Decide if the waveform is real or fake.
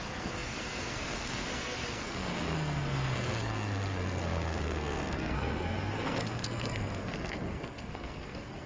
fake